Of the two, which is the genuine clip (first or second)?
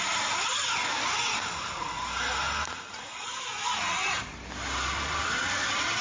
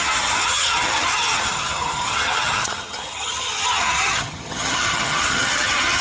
first